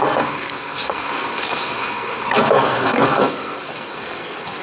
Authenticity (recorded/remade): remade